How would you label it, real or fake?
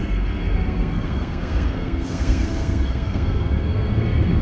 fake